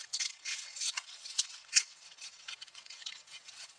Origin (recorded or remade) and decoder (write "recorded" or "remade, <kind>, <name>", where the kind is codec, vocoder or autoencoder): remade, vocoder, WaveNeXt